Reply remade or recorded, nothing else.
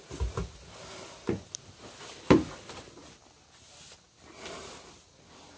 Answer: recorded